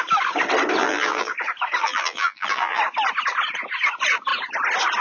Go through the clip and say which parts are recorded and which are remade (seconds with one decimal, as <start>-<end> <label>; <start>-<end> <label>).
0.0-0.8 recorded; 0.8-1.3 remade; 1.3-1.8 recorded; 1.8-2.8 remade; 2.8-5.0 recorded